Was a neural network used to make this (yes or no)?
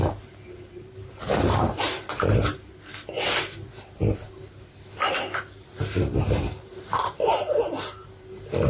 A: no